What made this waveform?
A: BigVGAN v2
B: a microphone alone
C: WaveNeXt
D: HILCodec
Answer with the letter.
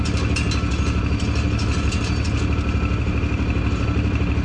B